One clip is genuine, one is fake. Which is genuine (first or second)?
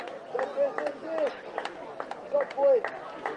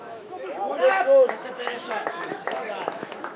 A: first